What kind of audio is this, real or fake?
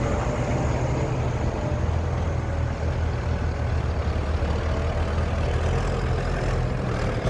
real